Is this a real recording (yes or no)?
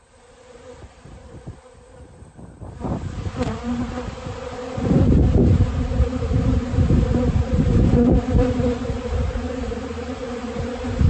no